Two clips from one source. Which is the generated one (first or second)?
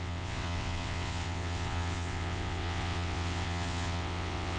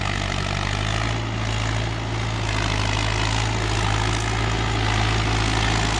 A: first